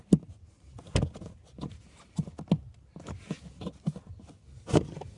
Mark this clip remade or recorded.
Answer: recorded